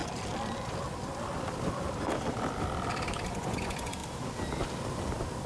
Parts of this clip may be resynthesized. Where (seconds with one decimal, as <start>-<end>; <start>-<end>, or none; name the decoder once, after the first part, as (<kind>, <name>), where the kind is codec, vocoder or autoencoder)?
3.3-4.0 (vocoder, Vocos)